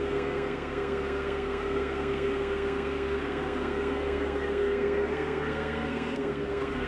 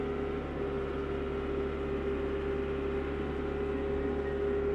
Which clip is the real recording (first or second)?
second